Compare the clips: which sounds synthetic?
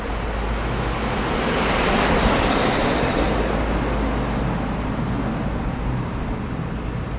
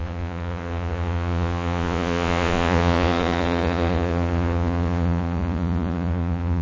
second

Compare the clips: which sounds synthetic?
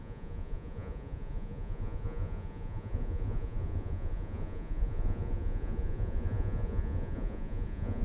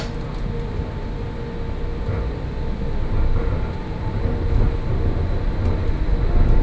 first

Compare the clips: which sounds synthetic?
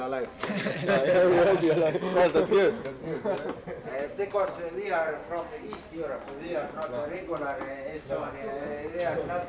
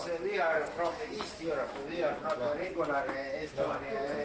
second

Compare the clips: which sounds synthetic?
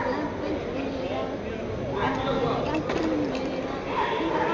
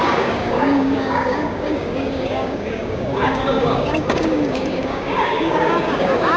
second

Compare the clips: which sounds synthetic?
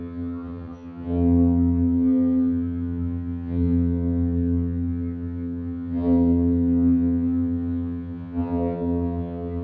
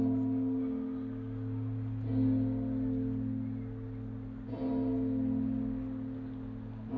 first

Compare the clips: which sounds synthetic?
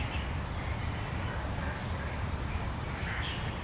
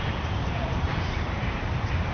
second